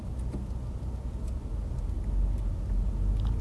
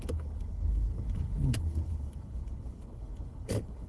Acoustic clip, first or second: first